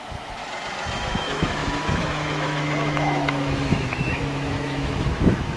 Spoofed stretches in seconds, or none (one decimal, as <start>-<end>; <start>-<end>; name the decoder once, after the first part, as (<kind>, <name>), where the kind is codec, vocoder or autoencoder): 0.0-0.4 (autoencoder, DAC-VAE); 1.0-5.6

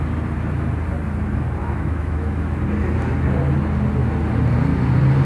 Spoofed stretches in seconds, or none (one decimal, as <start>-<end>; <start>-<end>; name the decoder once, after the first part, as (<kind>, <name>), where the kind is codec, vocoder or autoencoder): 1.6-2.6 (autoencoder, DAC-VAE)

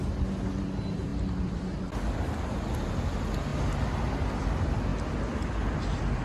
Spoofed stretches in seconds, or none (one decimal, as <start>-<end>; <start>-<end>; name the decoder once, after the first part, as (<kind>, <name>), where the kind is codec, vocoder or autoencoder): none

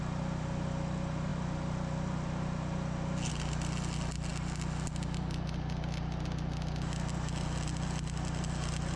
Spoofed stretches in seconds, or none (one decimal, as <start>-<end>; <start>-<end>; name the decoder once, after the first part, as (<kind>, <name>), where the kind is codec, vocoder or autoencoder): none